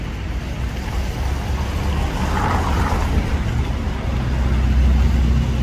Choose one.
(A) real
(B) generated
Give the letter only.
A